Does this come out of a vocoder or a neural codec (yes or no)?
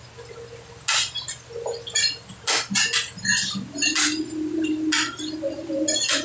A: no